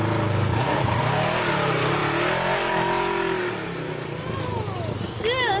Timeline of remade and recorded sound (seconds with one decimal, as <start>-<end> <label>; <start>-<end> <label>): 0.0-0.5 recorded; 0.5-1.0 remade; 1.0-5.6 recorded